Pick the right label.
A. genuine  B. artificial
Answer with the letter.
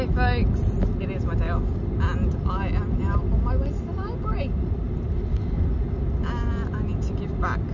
A